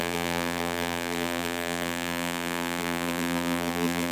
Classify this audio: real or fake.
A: fake